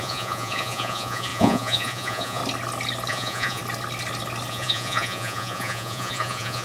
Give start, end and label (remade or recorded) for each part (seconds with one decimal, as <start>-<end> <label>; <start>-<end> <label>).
0.0-2.4 remade; 2.4-3.1 recorded; 3.1-3.6 remade; 3.6-4.5 recorded; 4.5-6.6 remade